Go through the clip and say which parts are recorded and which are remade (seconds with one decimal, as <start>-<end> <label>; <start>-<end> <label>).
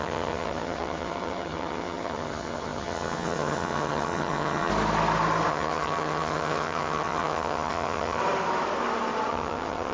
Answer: 0.0-4.7 remade; 4.7-5.5 recorded; 5.5-8.2 remade; 8.2-9.3 recorded; 9.3-9.9 remade